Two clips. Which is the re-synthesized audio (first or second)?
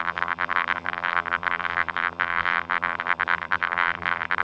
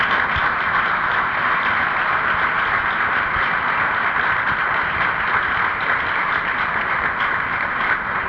first